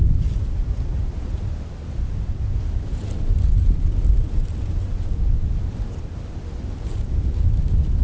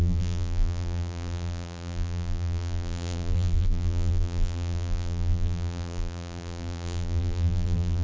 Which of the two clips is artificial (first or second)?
second